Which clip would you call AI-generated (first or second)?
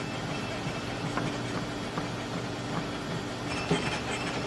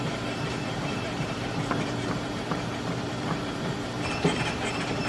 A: second